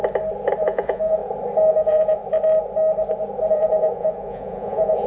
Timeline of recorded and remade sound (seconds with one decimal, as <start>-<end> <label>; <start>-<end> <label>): 0.0-0.6 recorded; 0.6-1.2 remade; 1.2-1.7 recorded; 1.7-2.2 remade; 2.2-3.5 recorded; 3.5-5.1 remade